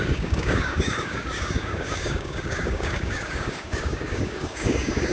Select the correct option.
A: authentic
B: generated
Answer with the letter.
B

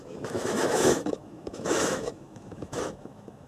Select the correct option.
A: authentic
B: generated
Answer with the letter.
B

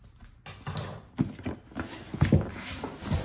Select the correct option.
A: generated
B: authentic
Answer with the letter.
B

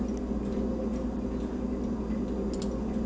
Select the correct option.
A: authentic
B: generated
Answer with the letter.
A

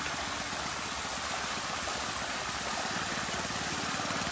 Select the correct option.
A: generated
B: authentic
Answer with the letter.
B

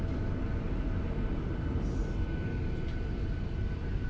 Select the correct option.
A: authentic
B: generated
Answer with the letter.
A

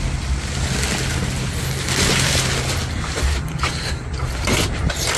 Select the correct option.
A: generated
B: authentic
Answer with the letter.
B